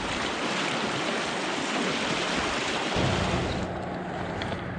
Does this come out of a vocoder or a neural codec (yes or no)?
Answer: no